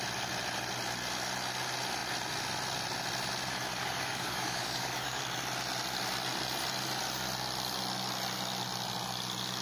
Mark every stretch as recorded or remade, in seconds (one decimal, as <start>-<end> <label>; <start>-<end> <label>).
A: 0.0-3.7 recorded; 3.7-5.2 remade; 5.2-9.6 recorded